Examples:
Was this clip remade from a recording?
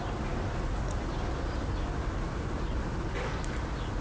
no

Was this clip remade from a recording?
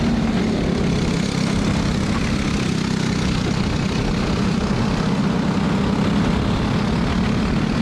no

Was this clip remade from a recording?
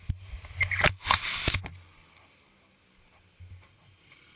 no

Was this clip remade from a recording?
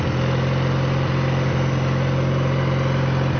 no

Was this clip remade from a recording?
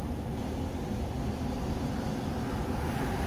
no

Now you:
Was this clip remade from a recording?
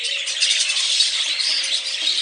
yes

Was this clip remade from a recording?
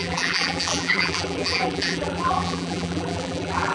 yes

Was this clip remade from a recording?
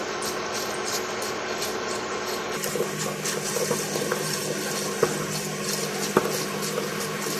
no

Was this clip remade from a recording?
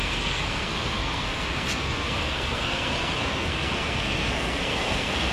yes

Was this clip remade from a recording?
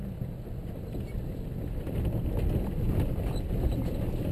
no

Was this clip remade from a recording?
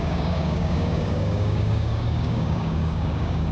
yes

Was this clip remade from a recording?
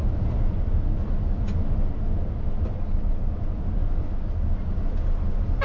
no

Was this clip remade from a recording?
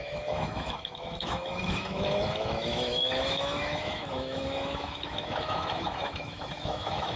yes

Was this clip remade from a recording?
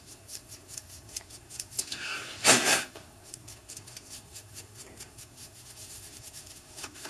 yes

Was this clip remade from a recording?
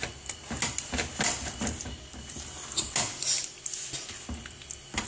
no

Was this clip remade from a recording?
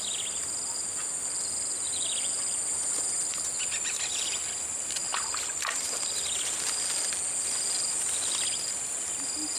no